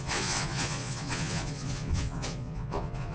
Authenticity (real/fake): fake